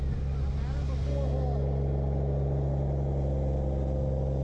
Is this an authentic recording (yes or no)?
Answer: yes